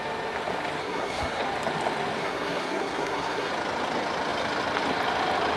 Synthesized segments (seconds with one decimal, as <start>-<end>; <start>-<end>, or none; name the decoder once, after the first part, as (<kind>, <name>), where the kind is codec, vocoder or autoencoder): 0.8-1.4 (codec, SNAC); 2.2-3.5